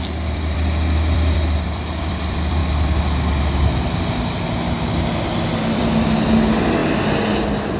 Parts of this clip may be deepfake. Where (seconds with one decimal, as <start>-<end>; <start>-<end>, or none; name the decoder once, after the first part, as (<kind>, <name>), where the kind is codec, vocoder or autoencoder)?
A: 0.0-2.6 (vocoder, BigVGAN v2); 5.6-6.8